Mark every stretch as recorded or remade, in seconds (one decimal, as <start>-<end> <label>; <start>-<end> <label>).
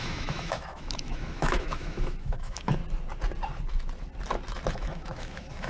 0.0-2.8 remade; 2.8-4.7 recorded; 4.7-5.7 remade